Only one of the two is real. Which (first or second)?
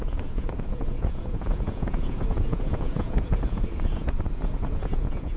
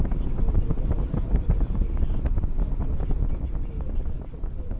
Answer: second